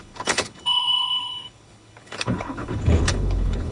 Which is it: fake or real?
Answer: fake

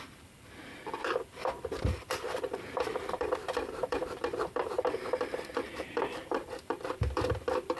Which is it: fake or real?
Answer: fake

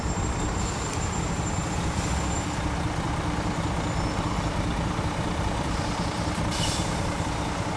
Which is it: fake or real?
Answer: fake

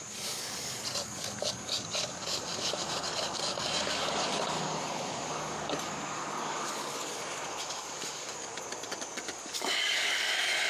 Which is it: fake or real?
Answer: fake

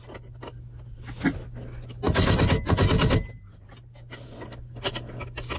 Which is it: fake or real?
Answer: real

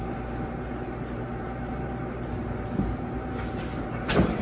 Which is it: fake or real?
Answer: fake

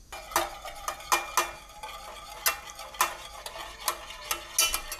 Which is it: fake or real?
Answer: real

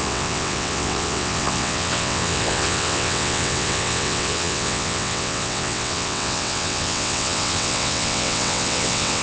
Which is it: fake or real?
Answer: fake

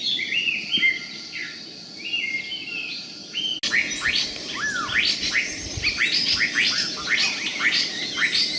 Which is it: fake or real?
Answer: real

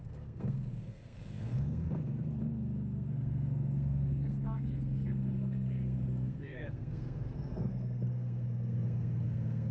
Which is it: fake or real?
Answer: fake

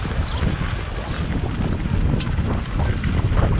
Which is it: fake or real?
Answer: real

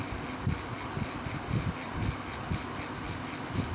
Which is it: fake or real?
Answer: real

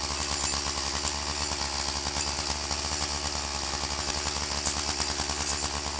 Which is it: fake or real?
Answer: real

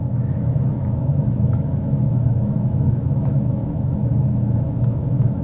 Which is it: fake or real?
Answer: fake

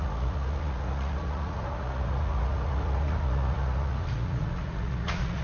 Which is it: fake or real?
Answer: fake